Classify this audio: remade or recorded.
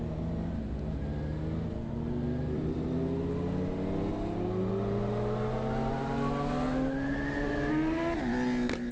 recorded